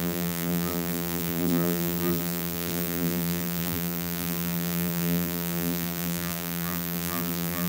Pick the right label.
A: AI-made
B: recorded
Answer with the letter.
A